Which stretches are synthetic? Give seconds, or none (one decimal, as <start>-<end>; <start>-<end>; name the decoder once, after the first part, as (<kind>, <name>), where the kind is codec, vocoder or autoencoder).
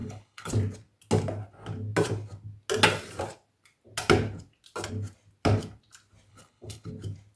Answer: 0.0-0.5 (codec, HILCodec); 6.3-6.9